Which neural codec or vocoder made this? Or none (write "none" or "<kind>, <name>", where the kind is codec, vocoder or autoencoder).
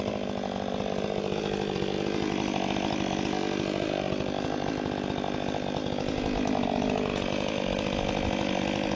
none